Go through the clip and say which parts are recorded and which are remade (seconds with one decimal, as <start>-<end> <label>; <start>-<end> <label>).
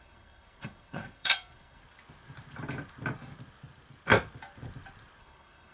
0.0-1.8 remade; 1.8-5.2 recorded; 5.2-5.7 remade